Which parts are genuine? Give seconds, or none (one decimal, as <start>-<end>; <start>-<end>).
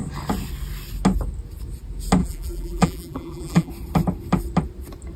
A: 0.0-2.2; 3.7-5.2